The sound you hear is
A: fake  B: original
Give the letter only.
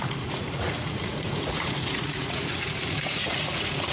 A